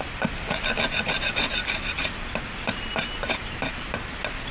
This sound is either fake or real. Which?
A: real